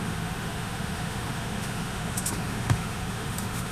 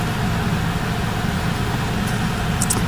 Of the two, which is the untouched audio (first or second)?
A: second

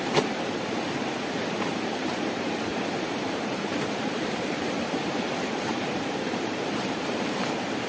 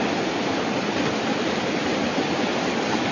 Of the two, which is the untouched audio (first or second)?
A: second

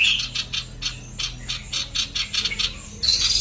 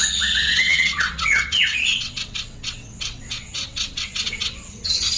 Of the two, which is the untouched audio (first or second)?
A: first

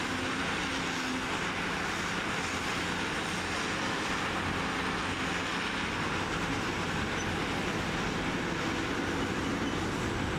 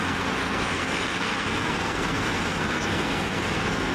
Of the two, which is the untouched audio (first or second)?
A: first